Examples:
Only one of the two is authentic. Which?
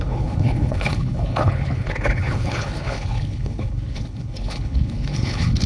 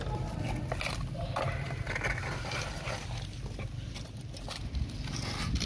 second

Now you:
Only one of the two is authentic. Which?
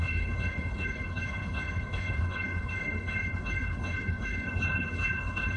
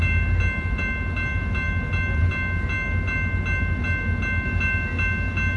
second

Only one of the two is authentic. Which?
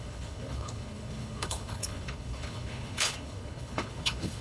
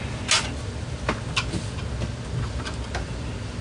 second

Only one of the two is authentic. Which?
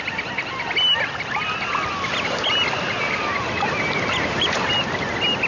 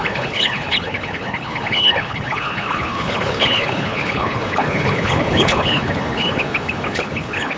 first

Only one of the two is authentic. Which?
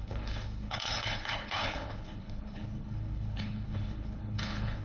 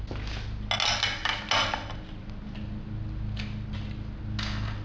second